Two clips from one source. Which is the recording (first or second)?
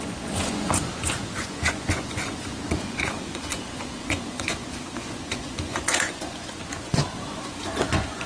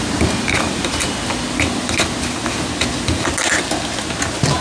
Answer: second